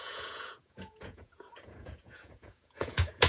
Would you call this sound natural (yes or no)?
no